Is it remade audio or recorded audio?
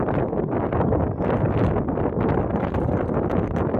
recorded